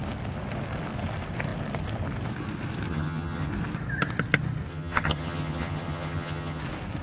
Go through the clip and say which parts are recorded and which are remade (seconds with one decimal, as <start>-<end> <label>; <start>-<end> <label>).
0.0-2.9 recorded; 2.9-3.5 remade; 3.5-4.7 recorded; 4.7-6.6 remade; 6.6-7.0 recorded